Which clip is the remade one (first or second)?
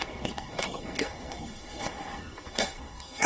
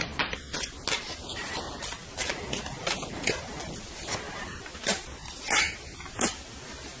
first